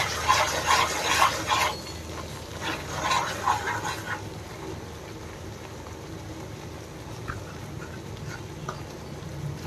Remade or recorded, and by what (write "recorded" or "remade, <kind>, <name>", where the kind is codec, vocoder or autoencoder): recorded